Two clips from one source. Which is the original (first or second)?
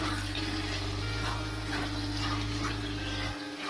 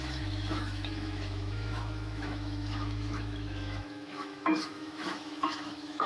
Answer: first